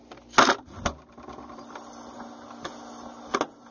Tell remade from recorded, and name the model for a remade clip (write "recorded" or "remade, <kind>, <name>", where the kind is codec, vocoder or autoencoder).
recorded